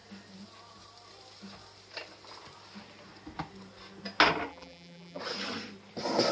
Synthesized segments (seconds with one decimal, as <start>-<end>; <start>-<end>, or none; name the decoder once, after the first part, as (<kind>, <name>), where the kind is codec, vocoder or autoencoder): 4.5-5.2 (vocoder, BigVGAN v2)

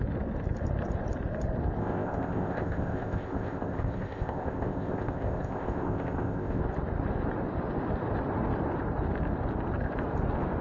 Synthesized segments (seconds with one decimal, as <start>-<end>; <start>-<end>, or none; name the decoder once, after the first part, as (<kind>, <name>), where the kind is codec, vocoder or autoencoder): 1.8-6.6 (codec, ZipCodec)

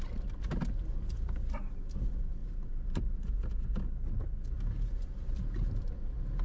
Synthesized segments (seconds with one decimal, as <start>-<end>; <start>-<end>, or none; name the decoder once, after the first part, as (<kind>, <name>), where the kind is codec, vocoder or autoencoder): 2.4-3.6 (vocoder, BigVGAN v2)

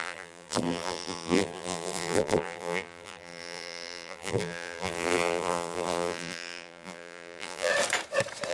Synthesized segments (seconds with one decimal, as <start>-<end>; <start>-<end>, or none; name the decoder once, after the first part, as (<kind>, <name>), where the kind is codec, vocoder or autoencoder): 0.0-7.7 (vocoder, BigVGAN v2)

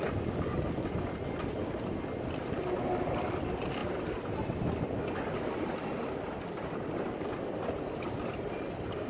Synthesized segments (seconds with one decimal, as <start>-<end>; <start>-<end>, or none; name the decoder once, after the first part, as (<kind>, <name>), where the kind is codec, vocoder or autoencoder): none

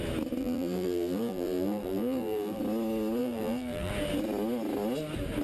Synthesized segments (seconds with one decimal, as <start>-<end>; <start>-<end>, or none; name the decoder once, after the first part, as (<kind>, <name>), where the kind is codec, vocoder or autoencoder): 0.4-2.6 (vocoder, BigVGAN v2); 3.2-3.9